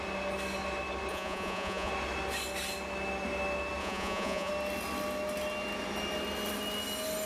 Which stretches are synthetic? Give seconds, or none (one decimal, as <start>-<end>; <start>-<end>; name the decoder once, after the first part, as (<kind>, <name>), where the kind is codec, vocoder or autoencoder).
1.1-1.9 (vocoder, Vocos); 3.8-4.5